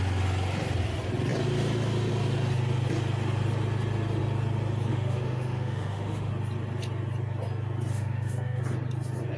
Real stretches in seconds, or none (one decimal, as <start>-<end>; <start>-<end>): 0.0-4.9; 6.3-7.9; 8.6-9.4